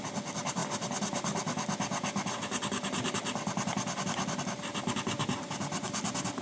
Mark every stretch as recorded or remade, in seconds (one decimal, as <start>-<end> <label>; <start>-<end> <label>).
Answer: 0.0-6.4 recorded